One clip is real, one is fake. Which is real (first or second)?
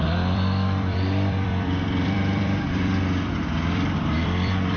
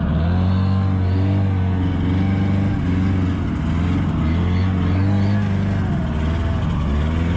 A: second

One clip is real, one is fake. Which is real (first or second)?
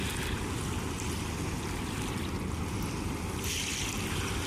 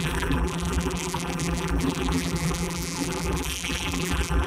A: first